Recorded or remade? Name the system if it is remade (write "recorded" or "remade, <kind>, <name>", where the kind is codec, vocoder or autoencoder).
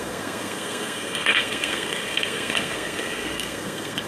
remade, codec, SNAC